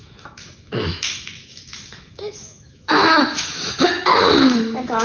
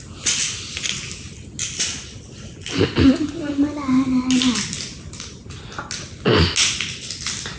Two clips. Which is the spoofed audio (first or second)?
first